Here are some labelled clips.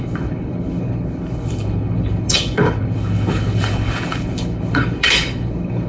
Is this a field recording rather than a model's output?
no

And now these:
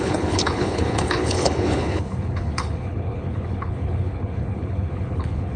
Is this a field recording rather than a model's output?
no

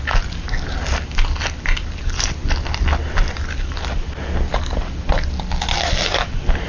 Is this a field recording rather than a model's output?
yes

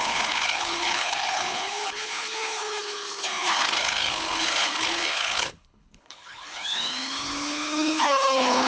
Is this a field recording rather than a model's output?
no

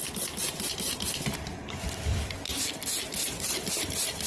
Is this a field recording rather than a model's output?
yes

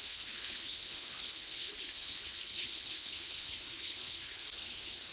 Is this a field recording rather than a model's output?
no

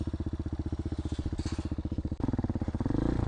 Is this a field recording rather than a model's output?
yes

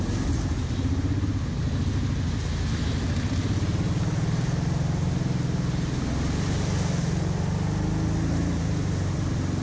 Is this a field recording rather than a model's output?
yes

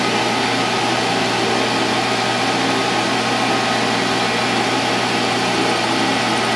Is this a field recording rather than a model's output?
yes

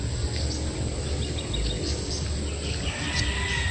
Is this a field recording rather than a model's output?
yes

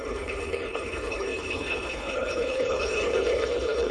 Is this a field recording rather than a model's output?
no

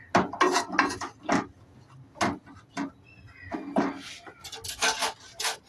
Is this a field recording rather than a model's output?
yes